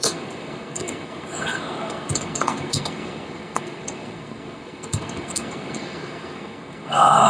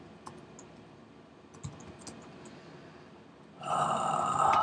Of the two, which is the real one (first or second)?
second